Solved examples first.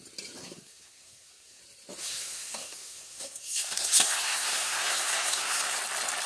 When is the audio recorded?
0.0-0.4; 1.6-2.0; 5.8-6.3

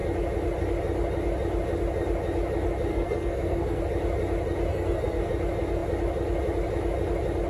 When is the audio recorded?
0.0-2.9; 3.8-4.7; 5.3-7.5

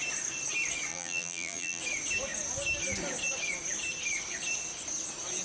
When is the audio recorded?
0.0-0.9; 1.8-5.4